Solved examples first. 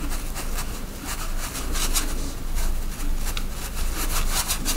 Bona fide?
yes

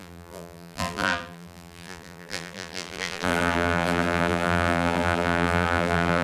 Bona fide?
no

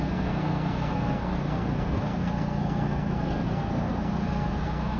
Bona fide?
no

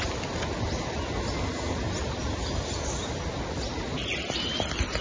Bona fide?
yes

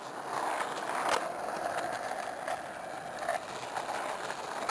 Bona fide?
yes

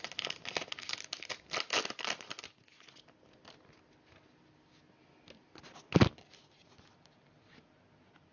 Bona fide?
yes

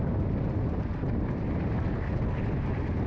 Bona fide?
yes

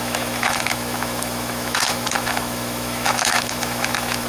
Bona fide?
no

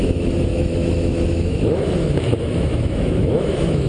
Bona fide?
no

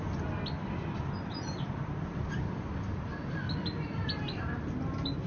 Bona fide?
yes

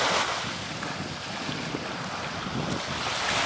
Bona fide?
yes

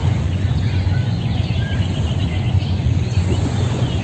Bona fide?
no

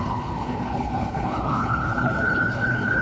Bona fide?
no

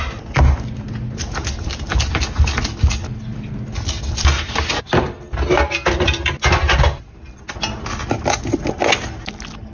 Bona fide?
yes